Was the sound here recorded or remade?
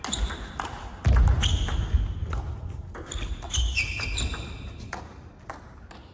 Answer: recorded